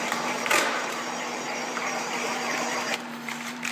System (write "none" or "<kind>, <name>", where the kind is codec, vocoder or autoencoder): vocoder, BigVGAN v2